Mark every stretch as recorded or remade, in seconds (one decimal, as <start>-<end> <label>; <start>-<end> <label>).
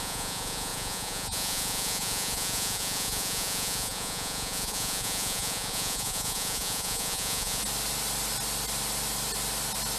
0.0-7.6 remade; 7.6-10.0 recorded